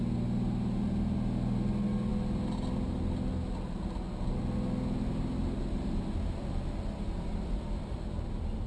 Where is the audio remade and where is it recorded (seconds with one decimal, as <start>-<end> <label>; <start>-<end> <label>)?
0.0-8.7 recorded